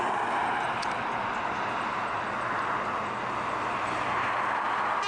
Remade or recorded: recorded